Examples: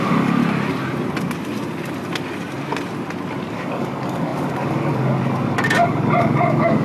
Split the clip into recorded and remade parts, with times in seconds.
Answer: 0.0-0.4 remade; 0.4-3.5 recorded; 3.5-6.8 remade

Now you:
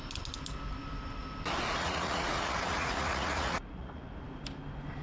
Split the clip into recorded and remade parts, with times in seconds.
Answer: 0.0-1.8 recorded; 1.8-4.1 remade; 4.1-5.0 recorded

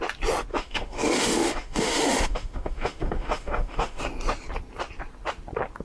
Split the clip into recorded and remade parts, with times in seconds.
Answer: 0.0-0.5 recorded; 0.5-4.0 remade; 4.0-5.8 recorded

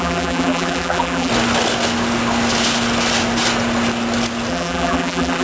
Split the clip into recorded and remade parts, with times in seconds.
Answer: 0.0-1.3 remade; 1.3-4.5 recorded; 4.5-5.4 remade

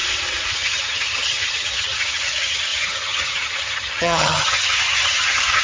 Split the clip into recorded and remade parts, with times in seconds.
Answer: 0.0-0.5 recorded; 0.5-5.6 remade